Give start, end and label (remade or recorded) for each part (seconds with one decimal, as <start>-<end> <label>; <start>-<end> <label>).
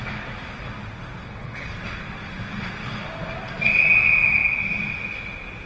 0.0-1.2 recorded; 1.2-1.7 remade; 1.7-5.7 recorded